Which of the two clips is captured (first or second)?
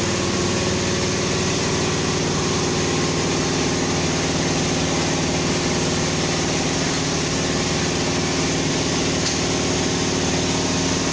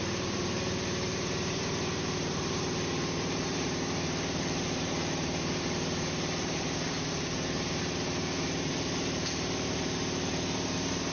first